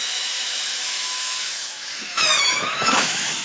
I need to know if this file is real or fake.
fake